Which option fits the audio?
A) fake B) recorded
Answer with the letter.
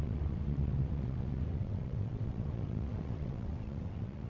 A